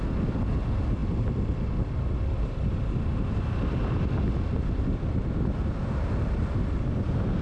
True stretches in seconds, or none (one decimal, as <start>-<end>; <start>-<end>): 0.0-7.4